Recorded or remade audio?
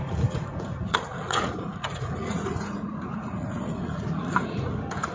remade